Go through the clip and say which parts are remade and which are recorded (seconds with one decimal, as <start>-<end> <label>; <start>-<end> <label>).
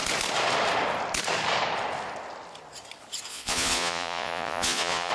0.0-3.3 recorded; 3.3-5.1 remade